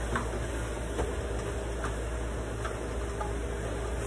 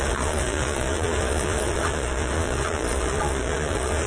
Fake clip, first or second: second